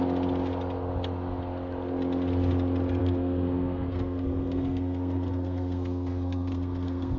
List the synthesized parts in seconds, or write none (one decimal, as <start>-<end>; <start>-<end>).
3.0-7.2